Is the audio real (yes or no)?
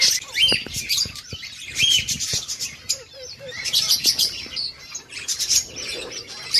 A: no